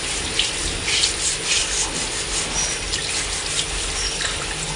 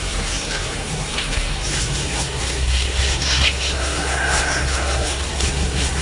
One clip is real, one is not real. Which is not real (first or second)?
second